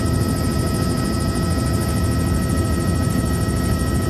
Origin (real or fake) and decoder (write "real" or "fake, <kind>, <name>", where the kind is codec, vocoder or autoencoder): real